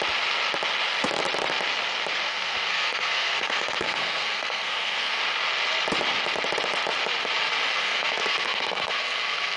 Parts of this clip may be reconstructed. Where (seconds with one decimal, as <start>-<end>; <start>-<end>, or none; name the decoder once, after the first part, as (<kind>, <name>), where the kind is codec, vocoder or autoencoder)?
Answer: 2.3-5.2 (codec, SNAC); 7.8-9.6